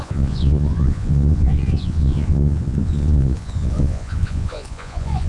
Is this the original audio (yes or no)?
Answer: no